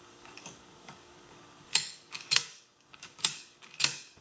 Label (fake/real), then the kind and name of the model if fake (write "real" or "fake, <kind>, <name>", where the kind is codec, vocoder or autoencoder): fake, codec, DAC